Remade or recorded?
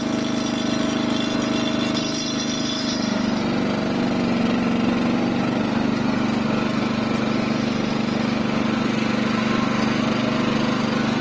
recorded